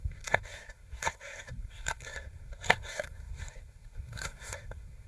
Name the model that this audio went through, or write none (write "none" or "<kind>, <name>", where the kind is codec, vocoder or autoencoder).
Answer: codec, SNAC